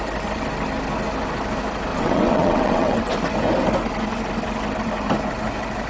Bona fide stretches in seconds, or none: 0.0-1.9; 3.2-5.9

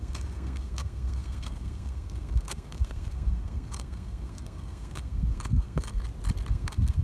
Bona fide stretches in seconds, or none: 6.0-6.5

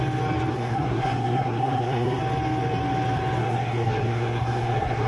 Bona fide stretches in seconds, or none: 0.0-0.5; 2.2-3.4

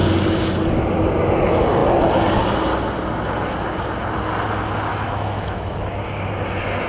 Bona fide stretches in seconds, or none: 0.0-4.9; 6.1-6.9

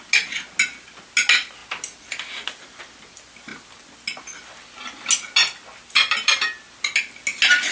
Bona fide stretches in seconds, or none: 0.0-7.7

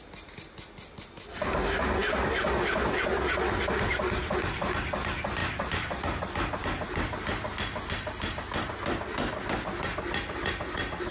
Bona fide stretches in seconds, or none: 0.0-11.1